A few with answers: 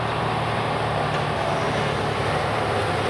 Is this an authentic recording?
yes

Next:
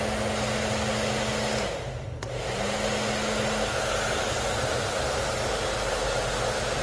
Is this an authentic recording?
yes